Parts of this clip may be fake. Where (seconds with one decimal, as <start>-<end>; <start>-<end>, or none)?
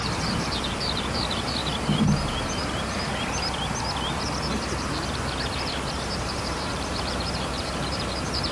0.0-1.6; 6.2-8.5